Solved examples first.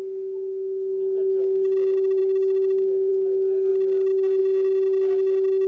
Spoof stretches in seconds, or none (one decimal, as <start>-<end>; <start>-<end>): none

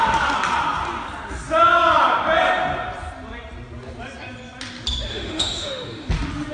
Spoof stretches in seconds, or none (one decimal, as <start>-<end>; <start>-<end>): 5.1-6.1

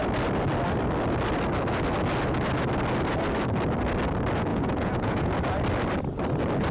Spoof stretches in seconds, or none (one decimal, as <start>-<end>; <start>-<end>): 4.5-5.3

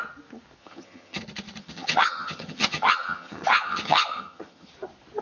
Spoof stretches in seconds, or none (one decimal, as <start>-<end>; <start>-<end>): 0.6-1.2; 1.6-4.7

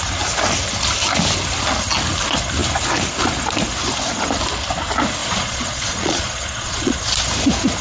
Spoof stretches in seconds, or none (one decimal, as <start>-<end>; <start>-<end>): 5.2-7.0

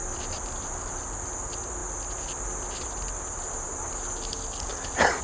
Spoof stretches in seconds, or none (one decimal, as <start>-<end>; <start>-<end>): none

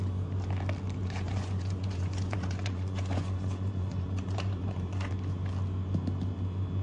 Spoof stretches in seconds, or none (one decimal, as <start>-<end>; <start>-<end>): 1.0-5.1